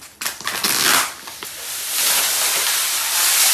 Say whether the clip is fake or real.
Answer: real